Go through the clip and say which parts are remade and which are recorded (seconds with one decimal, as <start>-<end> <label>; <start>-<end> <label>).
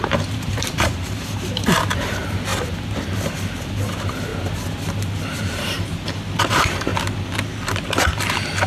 0.0-2.5 remade; 2.5-3.7 recorded; 3.7-4.3 remade; 4.3-5.5 recorded; 5.5-6.9 remade; 6.9-8.7 recorded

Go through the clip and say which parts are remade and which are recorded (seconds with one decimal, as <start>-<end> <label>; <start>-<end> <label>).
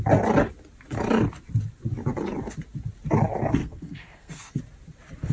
0.0-3.6 recorded; 3.6-4.6 remade; 4.6-5.3 recorded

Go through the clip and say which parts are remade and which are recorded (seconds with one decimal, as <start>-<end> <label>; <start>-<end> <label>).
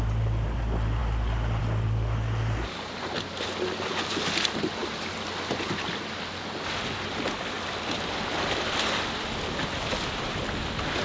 0.0-11.0 recorded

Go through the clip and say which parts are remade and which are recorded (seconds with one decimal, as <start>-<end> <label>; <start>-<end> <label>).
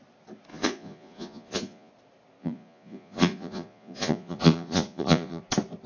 0.0-0.5 recorded; 0.5-1.9 remade; 1.9-2.4 recorded; 2.4-5.4 remade; 5.4-5.9 recorded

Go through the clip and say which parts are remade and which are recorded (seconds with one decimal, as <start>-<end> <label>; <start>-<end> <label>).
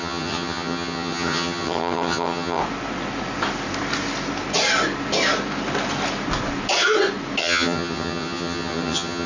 0.0-2.6 remade; 2.6-7.4 recorded; 7.4-9.3 remade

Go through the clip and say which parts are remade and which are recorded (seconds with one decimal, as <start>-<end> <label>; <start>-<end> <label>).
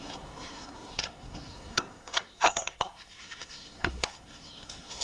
0.0-5.0 remade